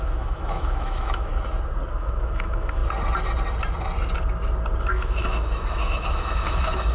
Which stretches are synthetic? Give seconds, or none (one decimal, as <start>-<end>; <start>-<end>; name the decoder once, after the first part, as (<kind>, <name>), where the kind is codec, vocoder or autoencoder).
0.0-1.3 (autoencoder, DAC-VAE); 2.0-2.8; 4.9-6.9